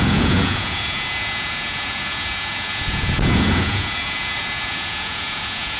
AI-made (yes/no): yes